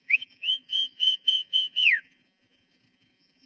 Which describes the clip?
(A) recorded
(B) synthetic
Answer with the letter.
B